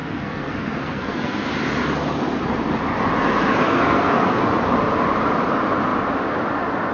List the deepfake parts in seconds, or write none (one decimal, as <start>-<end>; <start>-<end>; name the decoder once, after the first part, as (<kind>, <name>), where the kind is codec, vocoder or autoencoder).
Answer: 0.0-1.5 (codec, SNAC); 3.6-4.4